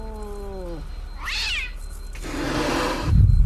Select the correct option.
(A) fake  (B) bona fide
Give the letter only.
B